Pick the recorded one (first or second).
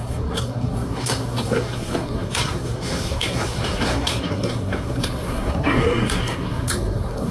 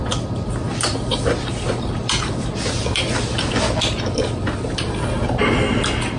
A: second